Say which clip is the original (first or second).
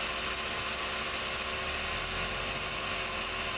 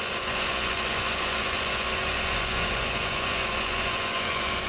first